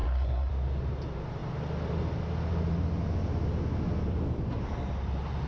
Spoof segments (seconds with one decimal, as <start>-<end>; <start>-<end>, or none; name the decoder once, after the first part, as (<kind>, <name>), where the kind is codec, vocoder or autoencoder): 0.0-0.5 (codec, SNAC)